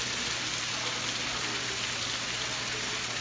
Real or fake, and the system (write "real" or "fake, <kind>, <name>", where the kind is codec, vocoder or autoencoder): real